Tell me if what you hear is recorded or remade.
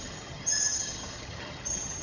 remade